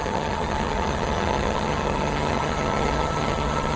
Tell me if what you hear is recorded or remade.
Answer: remade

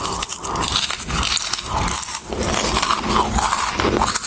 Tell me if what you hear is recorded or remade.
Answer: recorded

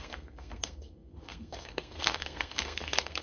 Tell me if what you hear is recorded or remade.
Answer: remade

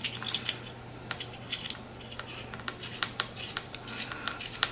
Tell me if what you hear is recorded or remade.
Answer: recorded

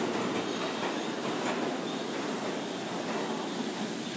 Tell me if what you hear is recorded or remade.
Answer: recorded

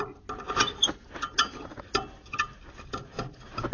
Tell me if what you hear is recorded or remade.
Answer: recorded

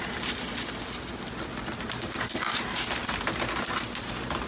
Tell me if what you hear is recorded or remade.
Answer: recorded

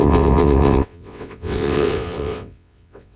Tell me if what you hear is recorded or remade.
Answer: remade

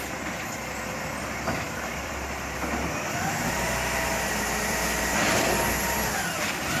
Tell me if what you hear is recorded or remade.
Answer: remade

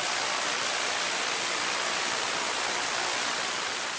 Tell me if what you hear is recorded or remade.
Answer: recorded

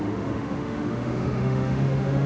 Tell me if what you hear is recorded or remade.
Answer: remade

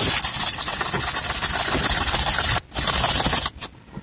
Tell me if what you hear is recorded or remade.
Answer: recorded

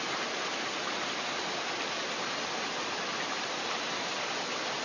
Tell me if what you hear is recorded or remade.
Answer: recorded